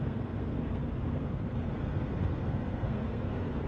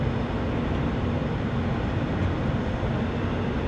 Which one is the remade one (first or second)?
first